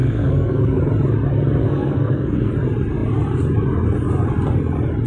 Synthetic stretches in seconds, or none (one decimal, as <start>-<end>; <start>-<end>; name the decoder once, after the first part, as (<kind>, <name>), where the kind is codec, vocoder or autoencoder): 0.0-0.8 (codec, SNAC); 1.6-2.5